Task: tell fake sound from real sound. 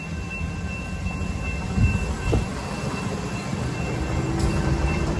fake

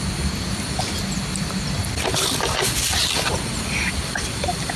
real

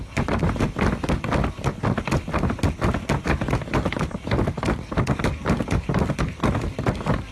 real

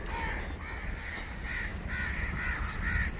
real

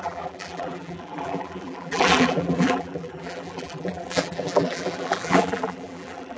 fake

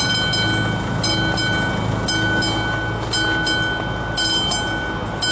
real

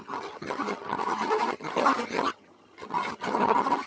fake